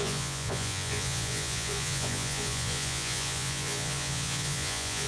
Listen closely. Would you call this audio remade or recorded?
remade